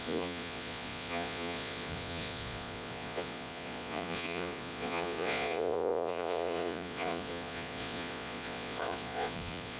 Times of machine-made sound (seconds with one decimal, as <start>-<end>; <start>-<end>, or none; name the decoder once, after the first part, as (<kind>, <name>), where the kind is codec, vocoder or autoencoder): 0.0-9.8 (vocoder, Vocos)